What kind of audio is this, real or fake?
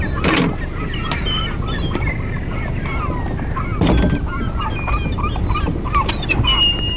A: real